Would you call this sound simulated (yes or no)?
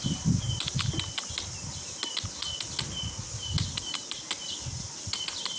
no